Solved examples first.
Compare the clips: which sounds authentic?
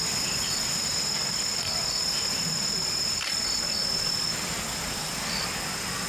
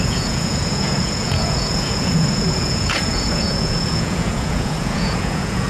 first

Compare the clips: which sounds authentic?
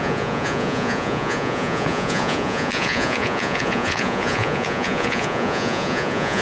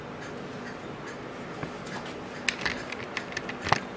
second